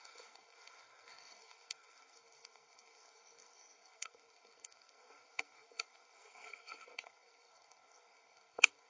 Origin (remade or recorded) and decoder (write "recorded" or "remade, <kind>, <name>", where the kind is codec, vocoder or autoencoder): remade, codec, SNAC